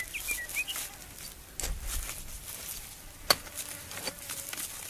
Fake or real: real